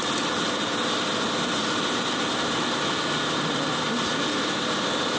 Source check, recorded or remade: recorded